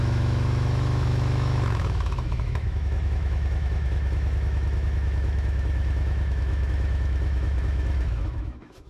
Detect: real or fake fake